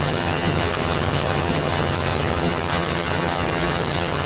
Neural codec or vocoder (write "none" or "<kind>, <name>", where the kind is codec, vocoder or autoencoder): vocoder, HiFi-GAN